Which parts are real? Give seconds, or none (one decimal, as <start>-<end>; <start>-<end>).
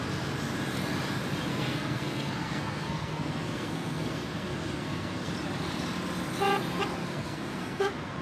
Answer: 0.0-1.5; 5.3-7.0